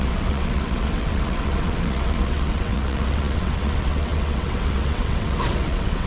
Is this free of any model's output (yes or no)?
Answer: no